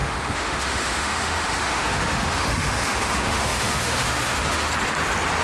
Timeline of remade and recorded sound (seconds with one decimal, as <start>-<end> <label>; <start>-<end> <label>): 0.0-4.7 remade; 4.7-5.4 recorded